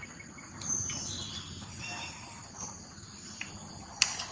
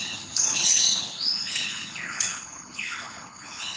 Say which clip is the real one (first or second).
first